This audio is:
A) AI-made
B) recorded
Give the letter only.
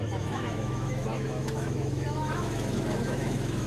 A